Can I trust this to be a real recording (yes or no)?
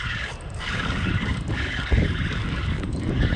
no